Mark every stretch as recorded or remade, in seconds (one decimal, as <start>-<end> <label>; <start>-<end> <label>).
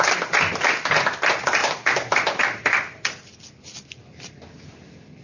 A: 0.0-5.2 recorded